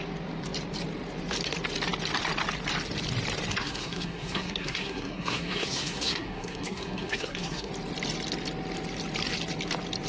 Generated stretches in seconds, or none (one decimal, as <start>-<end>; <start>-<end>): 3.6-7.7